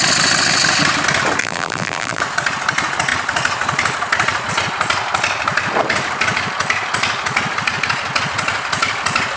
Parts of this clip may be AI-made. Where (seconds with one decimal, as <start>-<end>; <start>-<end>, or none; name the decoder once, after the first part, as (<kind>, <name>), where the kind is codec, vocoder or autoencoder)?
1.4-2.2 (vocoder, BigVGAN v2)